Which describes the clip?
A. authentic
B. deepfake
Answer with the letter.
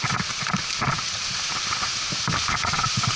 A